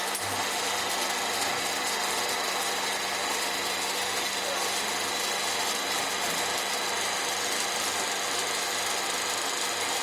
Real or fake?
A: real